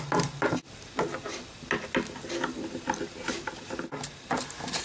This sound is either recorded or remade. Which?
recorded